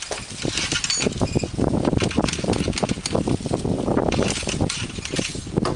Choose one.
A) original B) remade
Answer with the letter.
A